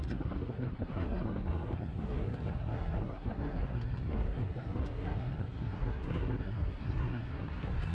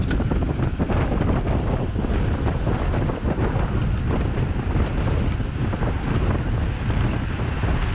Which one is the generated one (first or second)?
first